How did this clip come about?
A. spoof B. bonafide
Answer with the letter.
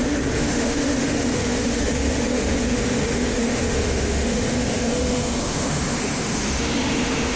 A